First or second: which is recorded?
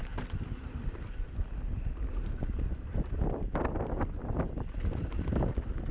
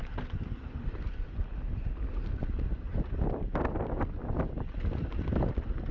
second